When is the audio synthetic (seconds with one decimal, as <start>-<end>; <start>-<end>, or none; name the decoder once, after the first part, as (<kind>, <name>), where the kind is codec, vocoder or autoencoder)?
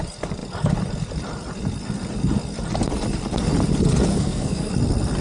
4.1-4.7 (codec, SNAC)